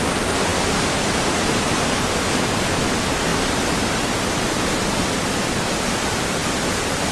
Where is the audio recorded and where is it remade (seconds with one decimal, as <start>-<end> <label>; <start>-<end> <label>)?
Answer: 0.0-3.3 recorded; 3.3-5.8 remade; 5.8-7.1 recorded